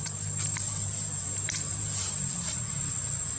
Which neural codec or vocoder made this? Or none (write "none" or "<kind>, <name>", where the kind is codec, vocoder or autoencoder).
vocoder, BigVGAN v2